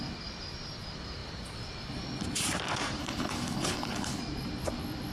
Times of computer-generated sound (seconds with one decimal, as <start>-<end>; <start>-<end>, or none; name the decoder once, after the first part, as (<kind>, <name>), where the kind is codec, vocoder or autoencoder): 3.0-4.2 (codec, HILCodec)